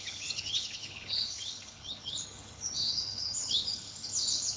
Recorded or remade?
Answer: remade